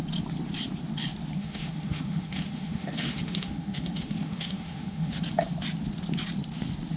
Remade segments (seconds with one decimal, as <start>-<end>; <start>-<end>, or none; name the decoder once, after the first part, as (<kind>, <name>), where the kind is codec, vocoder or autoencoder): 1.4-5.2 (autoencoder, DAC-VAE)